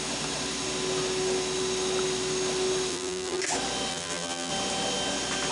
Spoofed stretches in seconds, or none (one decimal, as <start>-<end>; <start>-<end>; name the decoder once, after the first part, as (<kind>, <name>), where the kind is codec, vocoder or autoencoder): 2.9-3.4 (vocoder, BigVGAN v2); 3.9-4.5